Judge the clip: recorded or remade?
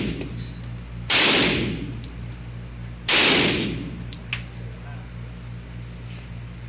recorded